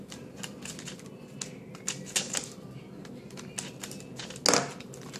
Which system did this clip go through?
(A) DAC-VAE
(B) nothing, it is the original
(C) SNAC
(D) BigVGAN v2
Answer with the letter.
B